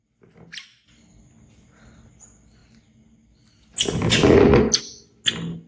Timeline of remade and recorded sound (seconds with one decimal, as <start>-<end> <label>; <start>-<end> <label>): 0.0-5.7 recorded